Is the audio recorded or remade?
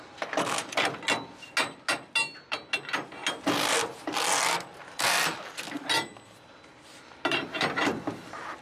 recorded